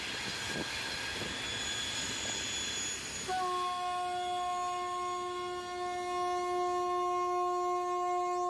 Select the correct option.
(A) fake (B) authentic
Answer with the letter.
B